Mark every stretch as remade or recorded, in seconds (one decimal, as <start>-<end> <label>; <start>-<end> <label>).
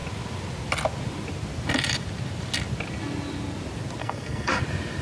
0.0-4.0 recorded; 4.0-4.6 remade; 4.6-5.0 recorded